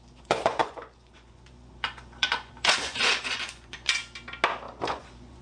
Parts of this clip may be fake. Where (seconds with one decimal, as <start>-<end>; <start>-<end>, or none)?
0.0-4.0; 4.9-5.4